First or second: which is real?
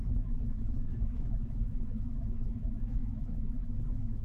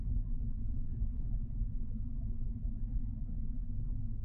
second